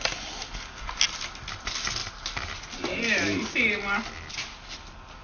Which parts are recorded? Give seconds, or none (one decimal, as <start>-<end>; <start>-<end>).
0.0-5.2